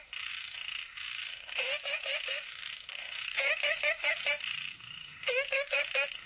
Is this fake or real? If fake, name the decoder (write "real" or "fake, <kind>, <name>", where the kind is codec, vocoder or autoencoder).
fake, autoencoder, DAC-VAE